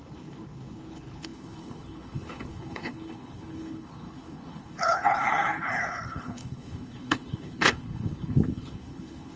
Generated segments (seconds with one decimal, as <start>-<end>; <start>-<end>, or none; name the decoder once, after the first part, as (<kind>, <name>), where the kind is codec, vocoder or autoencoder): 0.0-9.4 (codec, HILCodec)